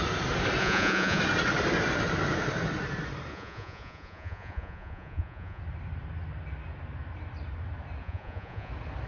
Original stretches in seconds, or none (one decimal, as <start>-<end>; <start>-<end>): 0.0-0.6; 1.2-3.3; 5.6-8.0; 8.7-9.1